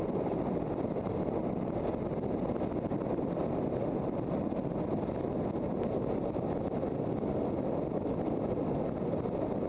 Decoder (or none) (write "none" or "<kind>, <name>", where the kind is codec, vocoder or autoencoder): none